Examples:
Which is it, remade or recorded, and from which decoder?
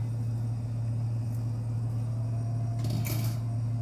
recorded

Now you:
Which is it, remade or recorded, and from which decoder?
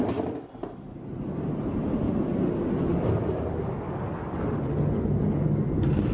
recorded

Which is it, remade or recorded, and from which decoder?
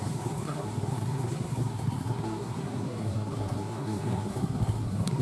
remade, codec, SNAC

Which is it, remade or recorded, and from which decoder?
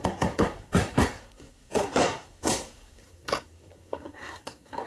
remade, codec, SNAC